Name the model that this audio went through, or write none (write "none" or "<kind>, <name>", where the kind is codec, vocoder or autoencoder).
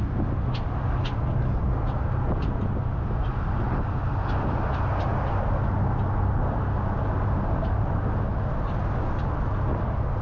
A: none